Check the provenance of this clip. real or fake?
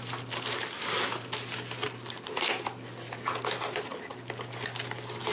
real